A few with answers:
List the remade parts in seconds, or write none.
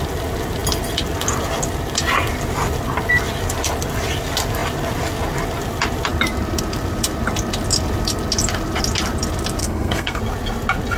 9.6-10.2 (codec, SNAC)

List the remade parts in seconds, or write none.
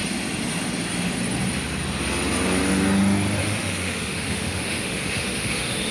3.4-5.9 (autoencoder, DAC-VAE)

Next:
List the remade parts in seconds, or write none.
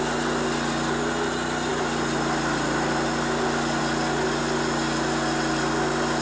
none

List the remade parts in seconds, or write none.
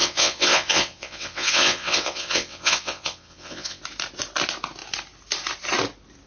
0.0-3.8 (vocoder, WaveNeXt)